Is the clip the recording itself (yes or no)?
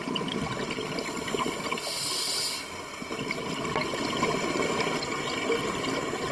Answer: yes